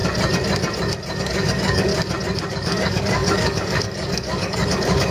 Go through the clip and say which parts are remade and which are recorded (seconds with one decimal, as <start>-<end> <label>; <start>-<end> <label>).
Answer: 0.0-1.1 recorded; 1.1-1.9 remade; 1.9-2.5 recorded; 2.5-5.1 remade